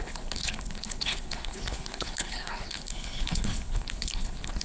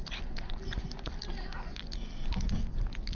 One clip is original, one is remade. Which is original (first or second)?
second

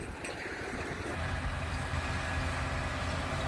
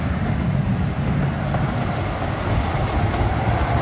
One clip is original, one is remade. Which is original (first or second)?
first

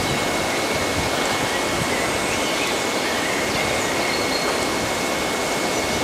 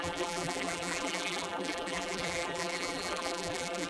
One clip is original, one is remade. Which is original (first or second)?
first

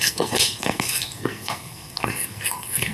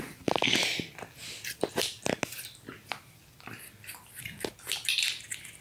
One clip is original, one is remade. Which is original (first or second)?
second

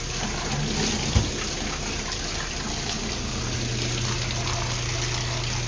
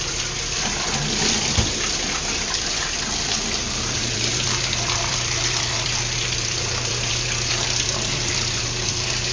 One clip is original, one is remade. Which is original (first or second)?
first